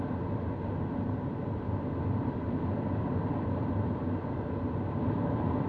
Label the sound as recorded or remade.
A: recorded